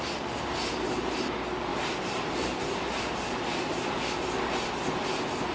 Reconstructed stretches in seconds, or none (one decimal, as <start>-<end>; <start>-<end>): 1.7-3.9

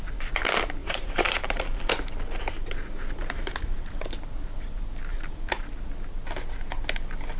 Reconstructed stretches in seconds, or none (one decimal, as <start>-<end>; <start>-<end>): 0.8-1.9; 3.2-3.9; 5.1-5.7

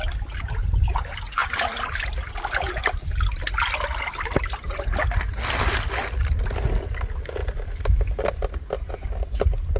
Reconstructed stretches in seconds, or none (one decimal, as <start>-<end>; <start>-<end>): 1.4-2.1; 7.4-8.2

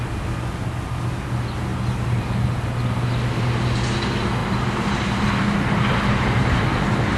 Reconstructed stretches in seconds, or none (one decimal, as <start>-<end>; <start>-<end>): 1.7-2.2; 4.4-5.3

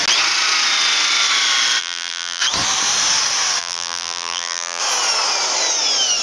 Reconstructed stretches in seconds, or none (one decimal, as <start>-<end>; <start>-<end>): 1.8-2.4; 3.6-4.8

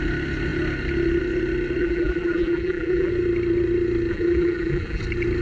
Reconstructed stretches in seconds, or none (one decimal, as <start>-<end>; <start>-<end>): 1.8-3.1; 4.1-5.0

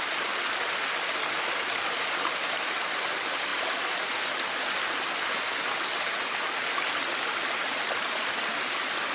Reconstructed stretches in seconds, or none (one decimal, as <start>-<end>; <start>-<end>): none

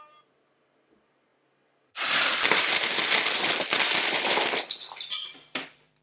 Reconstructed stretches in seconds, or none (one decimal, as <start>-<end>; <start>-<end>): 0.0-6.0